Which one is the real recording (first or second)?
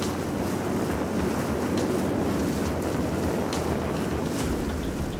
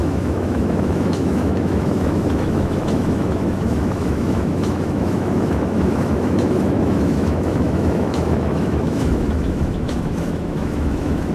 first